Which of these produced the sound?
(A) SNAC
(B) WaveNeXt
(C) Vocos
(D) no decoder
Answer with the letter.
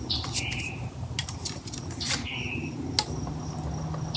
D